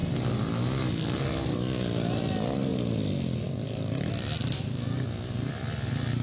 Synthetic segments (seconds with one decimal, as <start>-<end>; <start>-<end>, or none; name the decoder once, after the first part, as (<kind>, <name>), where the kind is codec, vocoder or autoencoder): none